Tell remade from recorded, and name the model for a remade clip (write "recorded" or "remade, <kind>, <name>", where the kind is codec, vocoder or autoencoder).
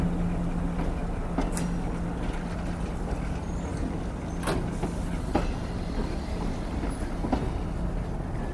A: recorded